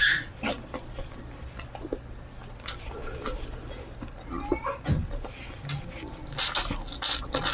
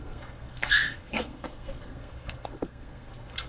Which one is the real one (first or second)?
first